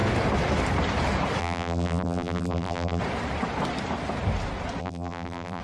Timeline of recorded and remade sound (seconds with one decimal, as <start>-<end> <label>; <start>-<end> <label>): 0.0-1.4 recorded; 1.4-3.0 remade; 3.0-4.8 recorded; 4.8-5.6 remade